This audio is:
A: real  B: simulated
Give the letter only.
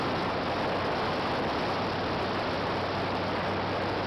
A